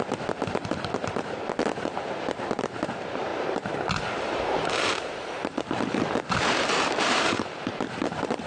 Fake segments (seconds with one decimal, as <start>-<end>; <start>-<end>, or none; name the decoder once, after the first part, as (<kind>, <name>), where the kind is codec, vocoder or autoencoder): 0.0-8.5 (vocoder, BigVGAN v2)